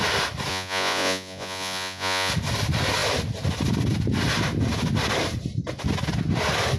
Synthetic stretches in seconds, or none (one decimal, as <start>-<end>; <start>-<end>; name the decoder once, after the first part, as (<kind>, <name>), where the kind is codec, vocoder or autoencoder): 0.5-2.3 (vocoder, Vocos)